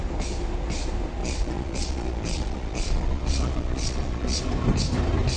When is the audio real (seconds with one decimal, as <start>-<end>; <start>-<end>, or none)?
0.0-1.2; 4.4-5.4